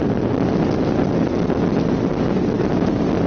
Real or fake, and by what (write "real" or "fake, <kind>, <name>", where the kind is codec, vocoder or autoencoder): real